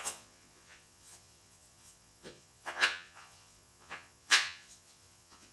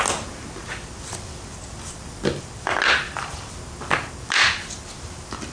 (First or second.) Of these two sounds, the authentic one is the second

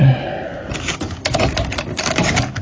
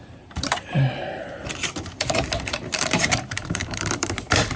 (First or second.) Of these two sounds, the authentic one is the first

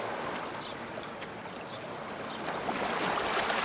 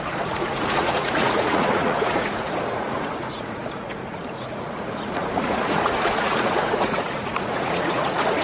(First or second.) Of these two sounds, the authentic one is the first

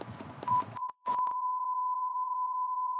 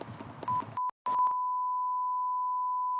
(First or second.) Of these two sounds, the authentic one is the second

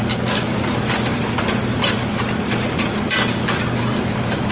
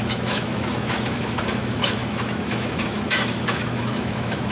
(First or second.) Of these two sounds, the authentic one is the first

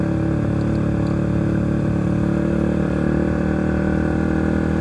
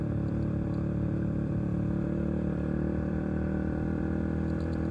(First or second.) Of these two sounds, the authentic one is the first